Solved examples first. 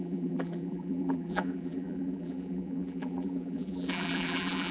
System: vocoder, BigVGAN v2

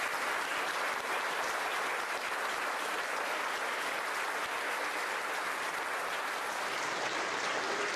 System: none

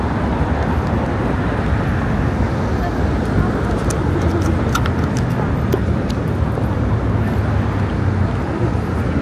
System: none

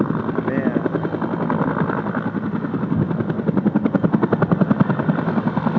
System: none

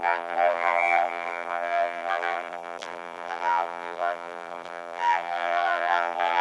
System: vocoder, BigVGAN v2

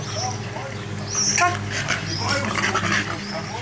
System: none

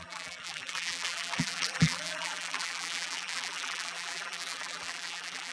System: vocoder, BigVGAN v2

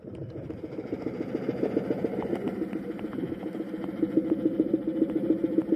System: none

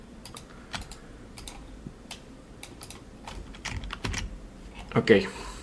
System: vocoder, BigVGAN v2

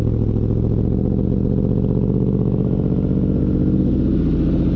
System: none